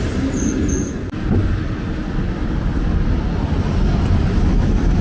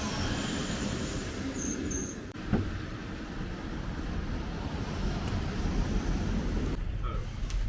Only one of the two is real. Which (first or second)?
first